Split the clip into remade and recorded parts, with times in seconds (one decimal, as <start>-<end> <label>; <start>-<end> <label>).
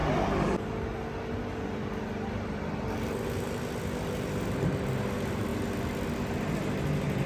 0.0-7.3 recorded